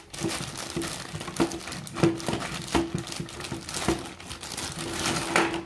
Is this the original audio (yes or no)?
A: yes